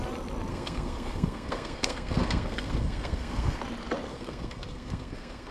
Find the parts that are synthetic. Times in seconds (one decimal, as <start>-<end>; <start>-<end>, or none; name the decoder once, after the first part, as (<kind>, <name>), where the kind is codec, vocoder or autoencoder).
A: 0.5-3.6 (codec, SNAC); 4.1-5.5